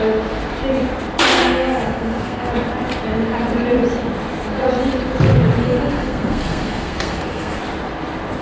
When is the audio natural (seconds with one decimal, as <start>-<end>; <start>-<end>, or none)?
0.0-1.3; 2.5-5.6; 7.6-8.4